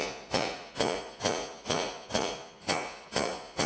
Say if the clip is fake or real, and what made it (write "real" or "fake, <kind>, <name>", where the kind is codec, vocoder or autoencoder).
fake, vocoder, Vocos